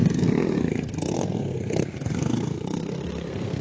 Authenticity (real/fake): fake